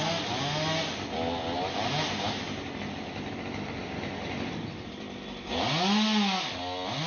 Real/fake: real